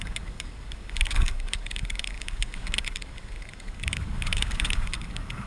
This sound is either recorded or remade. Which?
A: remade